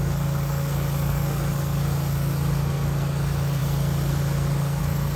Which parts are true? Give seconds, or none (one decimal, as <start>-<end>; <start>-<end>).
none